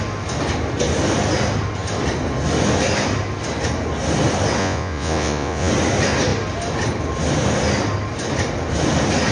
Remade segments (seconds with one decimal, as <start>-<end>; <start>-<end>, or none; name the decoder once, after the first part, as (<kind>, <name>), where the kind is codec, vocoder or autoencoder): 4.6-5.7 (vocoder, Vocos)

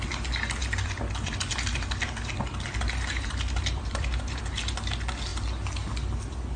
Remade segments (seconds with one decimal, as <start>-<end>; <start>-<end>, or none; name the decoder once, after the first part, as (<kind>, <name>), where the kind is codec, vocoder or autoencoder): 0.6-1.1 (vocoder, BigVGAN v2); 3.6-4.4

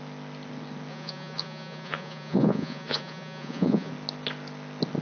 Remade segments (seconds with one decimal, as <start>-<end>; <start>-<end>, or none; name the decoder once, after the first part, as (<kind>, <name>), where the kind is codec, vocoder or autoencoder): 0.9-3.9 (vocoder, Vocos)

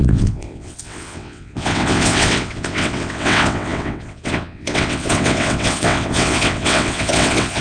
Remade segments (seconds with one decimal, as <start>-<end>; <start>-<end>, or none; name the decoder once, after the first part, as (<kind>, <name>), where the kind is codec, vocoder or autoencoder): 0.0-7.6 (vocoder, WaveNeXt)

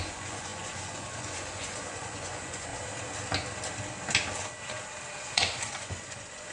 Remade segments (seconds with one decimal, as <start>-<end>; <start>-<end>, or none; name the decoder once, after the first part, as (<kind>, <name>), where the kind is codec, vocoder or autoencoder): 0.0-2.7 (vocoder, Vocos); 5.2-6.5